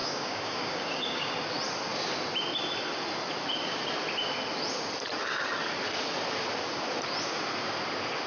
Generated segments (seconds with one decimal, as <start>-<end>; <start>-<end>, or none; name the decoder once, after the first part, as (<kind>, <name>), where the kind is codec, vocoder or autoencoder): 0.0-1.3 (codec, DAC)